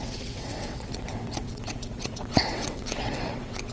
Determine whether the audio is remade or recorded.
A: remade